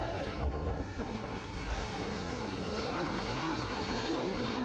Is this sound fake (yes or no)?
yes